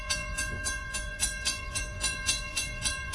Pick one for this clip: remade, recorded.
remade